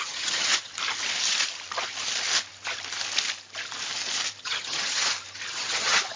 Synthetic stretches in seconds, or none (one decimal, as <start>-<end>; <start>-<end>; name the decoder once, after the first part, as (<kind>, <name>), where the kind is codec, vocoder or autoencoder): 0.0-0.7 (vocoder, HiFi-GAN); 4.4-5.0; 5.5-6.2